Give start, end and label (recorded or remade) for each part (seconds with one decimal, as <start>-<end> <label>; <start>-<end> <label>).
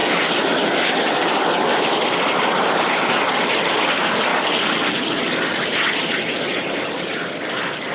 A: 0.0-3.5 remade; 3.5-4.3 recorded; 4.3-4.9 remade; 4.9-5.7 recorded; 5.7-6.2 remade; 6.2-7.9 recorded